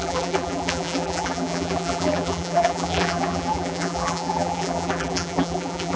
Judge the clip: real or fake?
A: fake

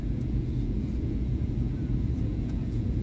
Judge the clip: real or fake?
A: fake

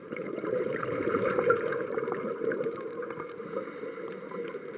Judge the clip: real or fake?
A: fake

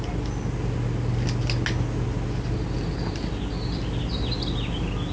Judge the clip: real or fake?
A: real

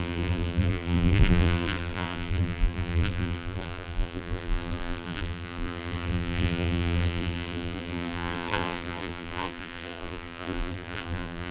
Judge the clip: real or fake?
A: fake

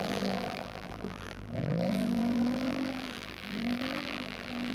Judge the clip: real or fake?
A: fake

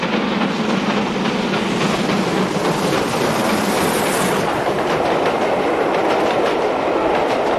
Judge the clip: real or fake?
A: real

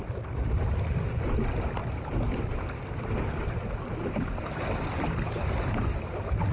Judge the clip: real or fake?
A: real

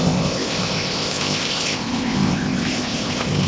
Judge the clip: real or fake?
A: fake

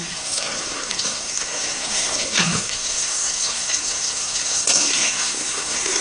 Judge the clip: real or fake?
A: fake